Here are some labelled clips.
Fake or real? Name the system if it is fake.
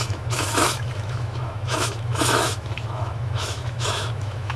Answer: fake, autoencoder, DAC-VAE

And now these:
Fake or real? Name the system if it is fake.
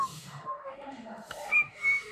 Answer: fake, autoencoder, DAC-VAE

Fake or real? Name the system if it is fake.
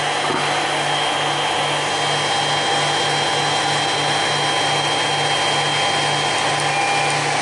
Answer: real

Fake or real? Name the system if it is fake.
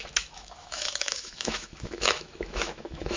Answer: fake, autoencoder, DAC-VAE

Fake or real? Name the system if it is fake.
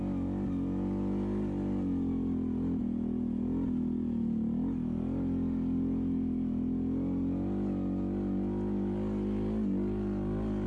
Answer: real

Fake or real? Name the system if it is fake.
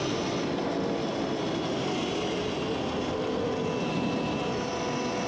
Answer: real